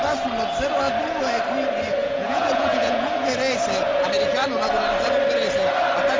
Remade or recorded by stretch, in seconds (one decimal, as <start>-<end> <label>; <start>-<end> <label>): 0.0-2.0 recorded; 2.0-3.3 remade; 3.3-6.2 recorded